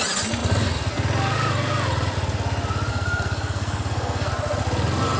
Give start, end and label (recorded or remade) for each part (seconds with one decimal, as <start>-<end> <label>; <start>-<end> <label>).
0.0-2.9 recorded; 2.9-4.3 remade; 4.3-5.2 recorded